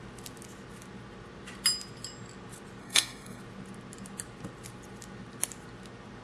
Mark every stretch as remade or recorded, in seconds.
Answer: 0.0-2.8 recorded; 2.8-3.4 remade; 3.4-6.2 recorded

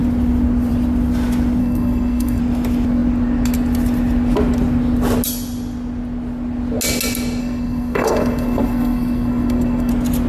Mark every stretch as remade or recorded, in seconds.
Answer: 0.0-1.6 recorded; 1.6-2.4 remade; 2.4-7.4 recorded; 7.4-9.9 remade; 9.9-10.3 recorded

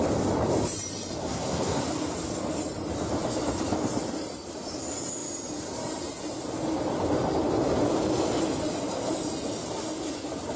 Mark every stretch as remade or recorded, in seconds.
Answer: 0.0-1.2 recorded; 1.2-1.8 remade; 1.8-10.6 recorded

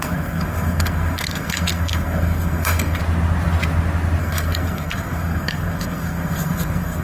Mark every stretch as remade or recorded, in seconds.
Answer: 0.0-3.0 remade; 3.0-4.2 recorded; 4.2-7.0 remade

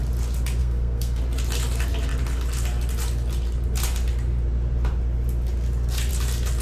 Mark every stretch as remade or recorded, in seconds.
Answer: 0.0-0.6 recorded; 0.6-1.2 remade; 1.2-6.6 recorded

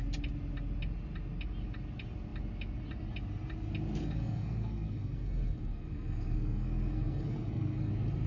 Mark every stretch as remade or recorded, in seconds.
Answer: 0.0-4.0 recorded; 4.0-7.9 remade; 7.9-8.3 recorded